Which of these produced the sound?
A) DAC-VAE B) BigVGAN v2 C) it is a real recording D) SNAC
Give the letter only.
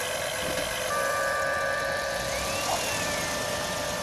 C